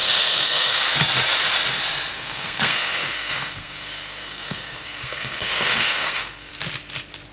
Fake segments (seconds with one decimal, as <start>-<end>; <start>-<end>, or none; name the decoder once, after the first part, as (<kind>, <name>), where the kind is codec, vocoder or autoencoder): 0.0-0.8 (codec, SNAC); 2.1-6.5